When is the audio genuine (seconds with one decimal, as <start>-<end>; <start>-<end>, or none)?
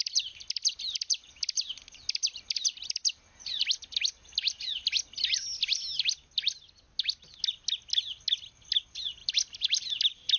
0.0-9.2; 10.0-10.4